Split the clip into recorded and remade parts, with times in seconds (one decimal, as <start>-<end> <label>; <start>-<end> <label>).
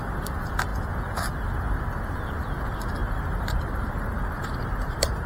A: 0.0-3.0 recorded; 3.0-5.3 remade